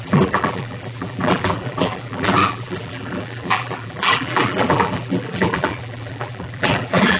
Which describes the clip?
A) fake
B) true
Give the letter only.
A